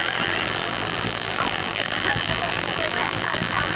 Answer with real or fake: fake